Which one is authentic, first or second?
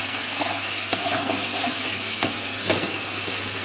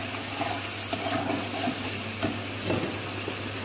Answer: second